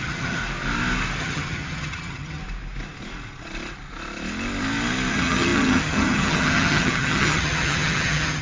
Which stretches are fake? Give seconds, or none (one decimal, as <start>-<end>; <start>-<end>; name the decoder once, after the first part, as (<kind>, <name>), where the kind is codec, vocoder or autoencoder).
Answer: 0.0-0.4 (vocoder, HiFi-GAN); 1.2-2.4; 5.1-8.4